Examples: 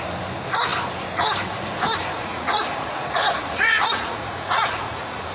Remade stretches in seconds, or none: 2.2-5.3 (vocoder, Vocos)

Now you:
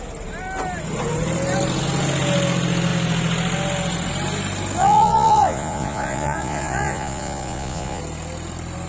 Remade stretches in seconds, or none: 4.8-8.0 (vocoder, Vocos)

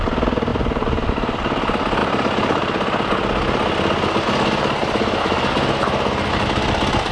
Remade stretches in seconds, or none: none

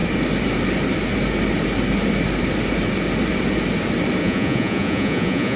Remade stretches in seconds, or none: 4.2-5.6 (vocoder, Vocos)

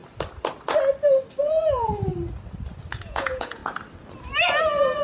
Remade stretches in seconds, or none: 1.4-2.1 (vocoder, Vocos); 3.0-3.6; 4.6-5.0

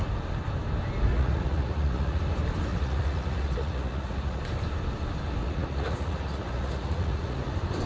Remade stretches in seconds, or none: 1.1-2.2 (vocoder, Vocos); 2.7-4.4; 5.4-7.5

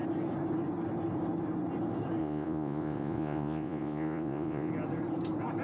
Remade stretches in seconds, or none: 2.2-4.7 (vocoder, Vocos)

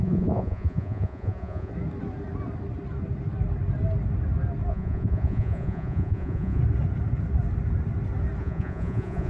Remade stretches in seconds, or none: 0.0-1.7 (vocoder, Vocos); 4.7-6.6; 8.4-9.3